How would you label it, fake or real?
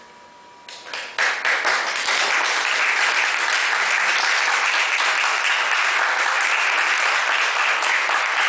real